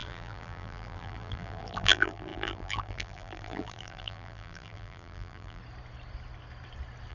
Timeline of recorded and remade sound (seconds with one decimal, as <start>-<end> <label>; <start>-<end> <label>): 0.0-5.6 remade; 5.6-7.1 recorded